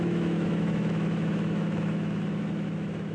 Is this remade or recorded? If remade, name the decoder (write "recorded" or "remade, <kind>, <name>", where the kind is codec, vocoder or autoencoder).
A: remade, autoencoder, DAC-VAE